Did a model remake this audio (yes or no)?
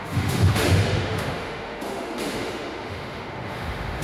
yes